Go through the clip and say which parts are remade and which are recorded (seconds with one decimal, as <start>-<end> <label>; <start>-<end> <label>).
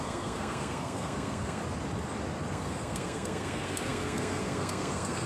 0.0-1.6 remade; 1.6-2.5 recorded; 2.5-5.3 remade